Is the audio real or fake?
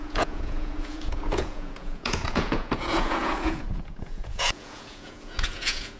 fake